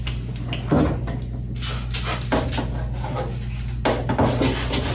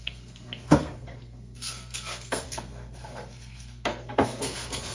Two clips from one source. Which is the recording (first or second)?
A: first